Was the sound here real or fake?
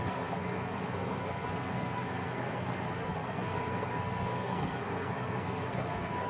fake